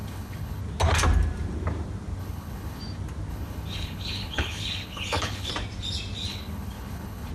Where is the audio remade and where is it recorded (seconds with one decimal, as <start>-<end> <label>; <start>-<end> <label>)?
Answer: 0.0-0.6 remade; 0.6-2.2 recorded; 2.2-2.8 remade; 2.8-3.3 recorded; 3.3-5.5 remade; 5.5-6.3 recorded; 6.3-7.3 remade